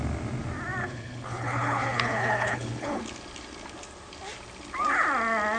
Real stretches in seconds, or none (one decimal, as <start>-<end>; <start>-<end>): 0.0-0.8; 3.0-5.6